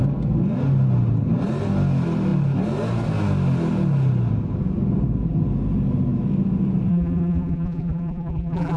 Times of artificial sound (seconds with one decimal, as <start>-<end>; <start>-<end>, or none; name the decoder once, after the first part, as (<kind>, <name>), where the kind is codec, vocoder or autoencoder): 6.9-8.8 (vocoder, BigVGAN v2)